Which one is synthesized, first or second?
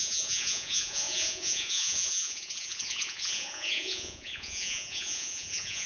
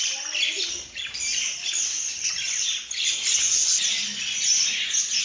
first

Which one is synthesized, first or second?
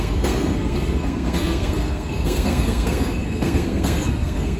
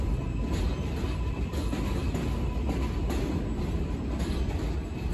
first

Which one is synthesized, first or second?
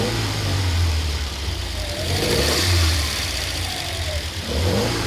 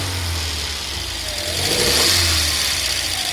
first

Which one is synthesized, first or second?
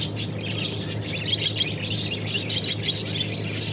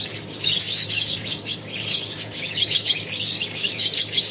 second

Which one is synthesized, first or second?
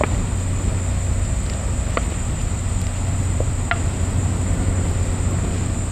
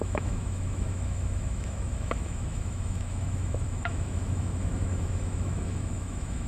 second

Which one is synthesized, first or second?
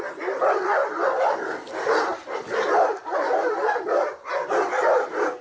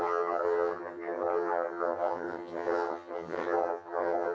second